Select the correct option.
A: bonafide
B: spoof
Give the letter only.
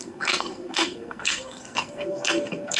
B